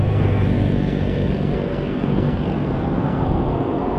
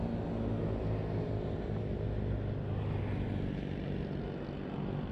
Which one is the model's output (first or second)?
first